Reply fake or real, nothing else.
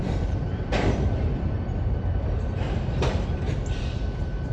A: fake